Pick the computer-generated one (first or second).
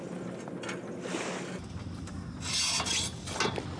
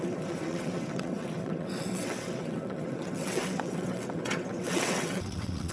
second